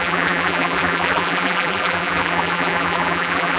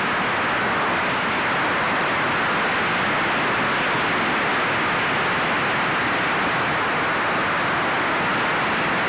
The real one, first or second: second